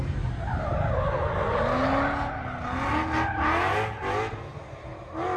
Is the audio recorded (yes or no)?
yes